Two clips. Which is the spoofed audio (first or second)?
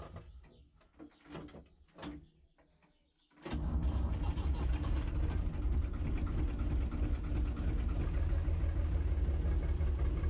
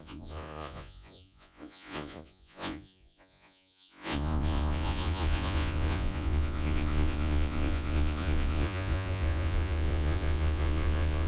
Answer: second